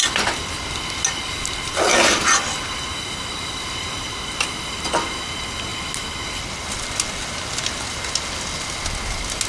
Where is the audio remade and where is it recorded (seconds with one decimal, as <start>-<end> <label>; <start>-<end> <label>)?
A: 0.0-9.5 recorded